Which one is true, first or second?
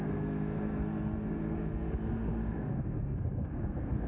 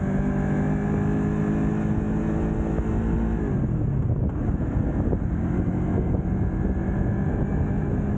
second